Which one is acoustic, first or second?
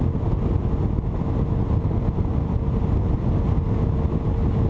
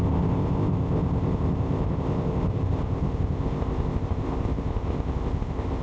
first